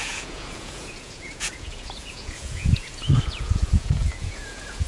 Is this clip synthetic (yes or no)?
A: yes